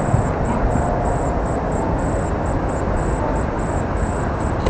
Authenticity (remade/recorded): recorded